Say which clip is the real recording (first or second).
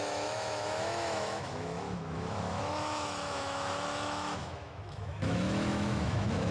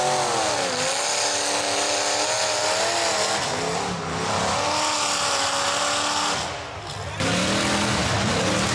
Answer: second